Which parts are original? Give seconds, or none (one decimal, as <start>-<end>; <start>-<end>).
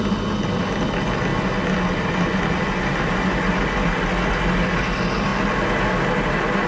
0.0-6.7